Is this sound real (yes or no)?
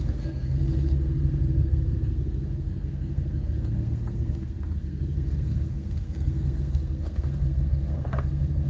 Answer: no